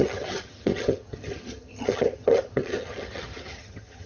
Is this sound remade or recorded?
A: remade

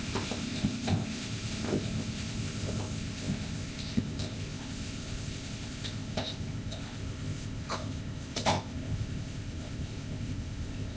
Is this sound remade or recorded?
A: remade